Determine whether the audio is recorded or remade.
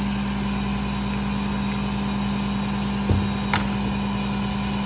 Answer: recorded